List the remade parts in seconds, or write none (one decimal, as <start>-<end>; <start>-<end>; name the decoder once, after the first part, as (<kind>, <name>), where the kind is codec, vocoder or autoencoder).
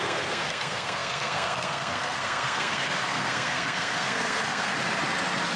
0.0-4.7 (codec, SNAC)